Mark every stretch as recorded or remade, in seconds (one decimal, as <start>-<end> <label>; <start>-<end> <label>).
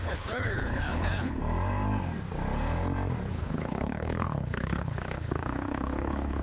0.0-1.4 remade; 1.4-3.3 recorded; 3.3-6.4 remade